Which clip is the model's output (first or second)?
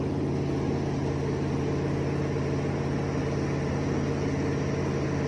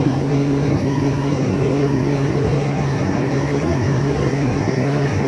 second